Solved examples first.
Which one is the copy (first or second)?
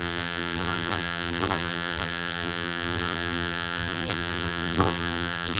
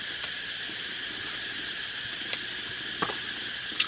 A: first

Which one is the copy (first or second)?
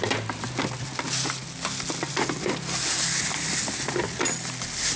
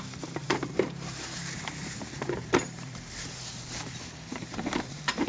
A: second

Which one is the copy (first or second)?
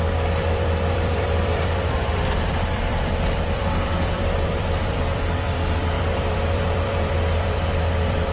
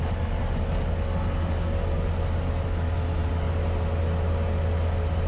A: first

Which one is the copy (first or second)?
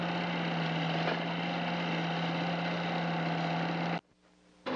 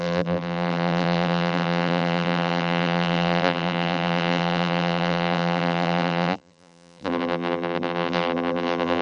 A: second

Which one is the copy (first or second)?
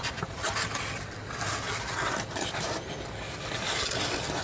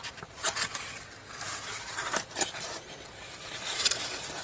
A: second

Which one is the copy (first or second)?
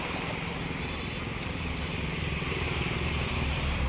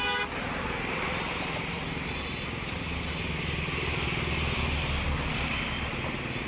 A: first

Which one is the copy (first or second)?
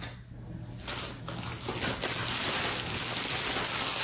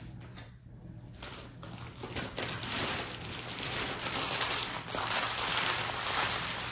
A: second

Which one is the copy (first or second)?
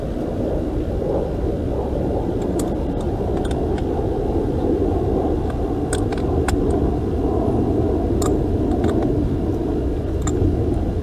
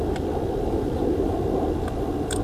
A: second